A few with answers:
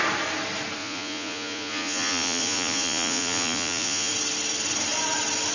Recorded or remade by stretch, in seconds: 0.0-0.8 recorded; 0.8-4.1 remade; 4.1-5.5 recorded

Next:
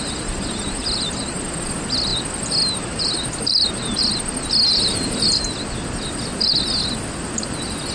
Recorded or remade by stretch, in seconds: 0.0-7.9 recorded